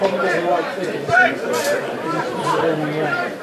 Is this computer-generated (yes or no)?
yes